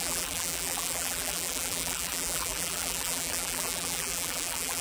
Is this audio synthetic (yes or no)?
yes